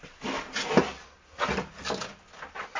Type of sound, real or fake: real